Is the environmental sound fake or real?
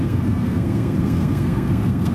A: fake